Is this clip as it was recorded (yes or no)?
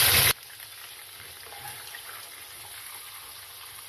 yes